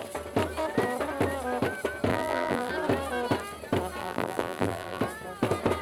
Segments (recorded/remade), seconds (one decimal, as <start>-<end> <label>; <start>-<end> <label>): 0.0-2.1 recorded; 2.1-2.7 remade; 2.7-4.0 recorded; 4.0-5.0 remade; 5.0-5.8 recorded